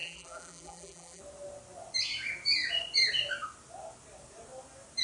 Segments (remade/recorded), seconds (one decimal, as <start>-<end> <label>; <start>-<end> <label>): 0.0-1.2 remade; 1.2-5.0 recorded